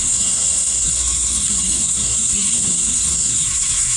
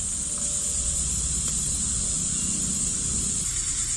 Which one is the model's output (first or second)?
first